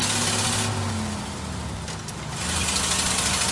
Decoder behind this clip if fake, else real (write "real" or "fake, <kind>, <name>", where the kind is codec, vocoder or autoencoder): real